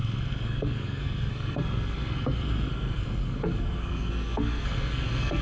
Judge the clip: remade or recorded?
remade